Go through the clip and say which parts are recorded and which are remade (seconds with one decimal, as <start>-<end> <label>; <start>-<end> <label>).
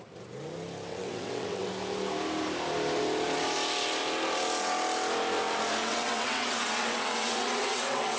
0.0-0.9 recorded; 0.9-1.7 remade; 1.7-5.8 recorded; 5.8-8.2 remade